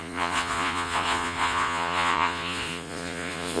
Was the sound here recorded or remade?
remade